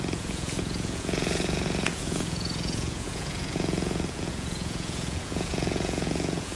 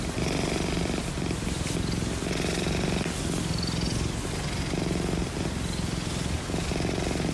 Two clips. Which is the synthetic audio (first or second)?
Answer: first